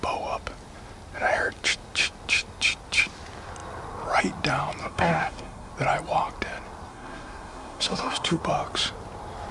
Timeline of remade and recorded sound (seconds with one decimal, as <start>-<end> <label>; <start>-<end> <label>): 0.0-4.8 recorded; 4.8-5.7 remade; 5.7-6.9 recorded; 6.9-8.4 remade; 8.4-9.5 recorded